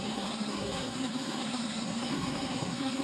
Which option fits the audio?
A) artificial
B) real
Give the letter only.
A